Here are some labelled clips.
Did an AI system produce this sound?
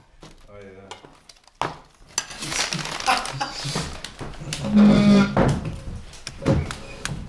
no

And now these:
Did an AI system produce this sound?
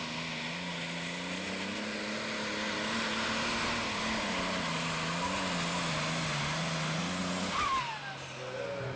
no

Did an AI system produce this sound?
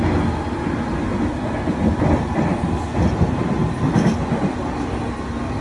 no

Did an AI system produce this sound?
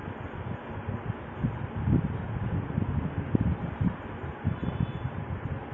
no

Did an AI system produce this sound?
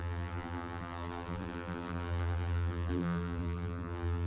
yes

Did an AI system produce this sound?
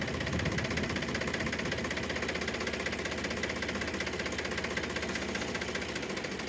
no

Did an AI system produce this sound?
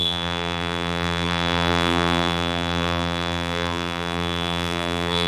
yes